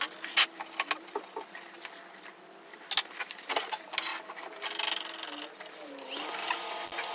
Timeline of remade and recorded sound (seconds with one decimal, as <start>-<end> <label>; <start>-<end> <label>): 0.0-7.1 recorded